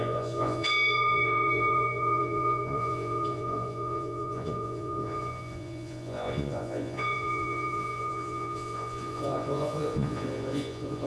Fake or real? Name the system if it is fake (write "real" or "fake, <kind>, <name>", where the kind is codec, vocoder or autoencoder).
fake, vocoder, Vocos